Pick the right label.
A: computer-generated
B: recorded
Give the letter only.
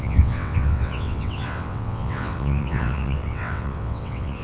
A